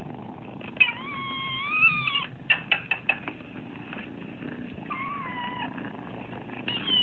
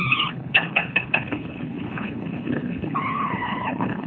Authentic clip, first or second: first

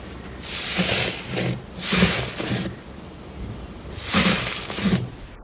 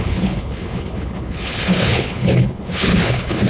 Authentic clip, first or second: first